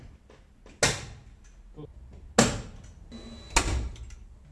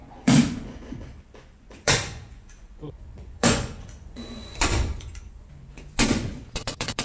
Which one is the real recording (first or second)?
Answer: first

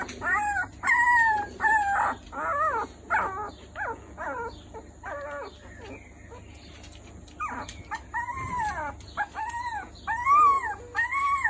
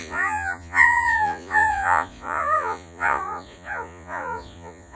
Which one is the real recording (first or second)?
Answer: first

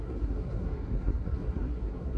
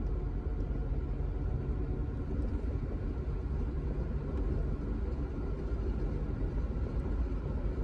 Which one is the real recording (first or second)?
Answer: second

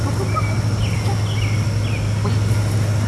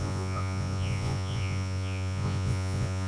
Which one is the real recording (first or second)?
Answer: first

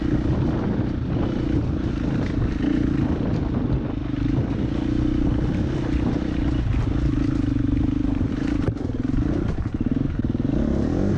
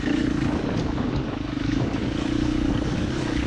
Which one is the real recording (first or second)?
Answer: first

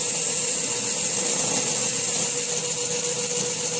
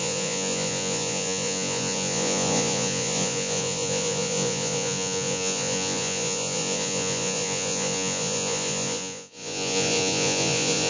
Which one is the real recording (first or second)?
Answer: first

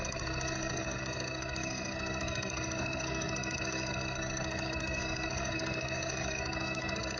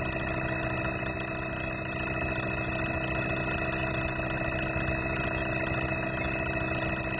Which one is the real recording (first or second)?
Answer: second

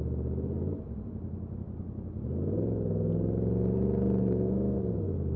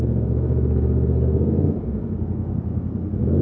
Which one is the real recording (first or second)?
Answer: first